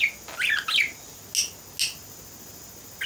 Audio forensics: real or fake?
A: real